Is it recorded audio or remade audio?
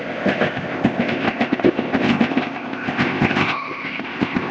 remade